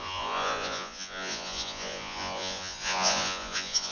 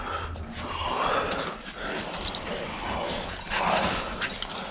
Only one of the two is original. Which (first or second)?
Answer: second